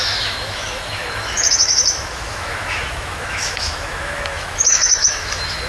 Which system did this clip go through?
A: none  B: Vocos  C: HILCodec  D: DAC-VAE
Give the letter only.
D